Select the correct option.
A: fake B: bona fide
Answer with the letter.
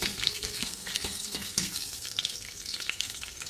A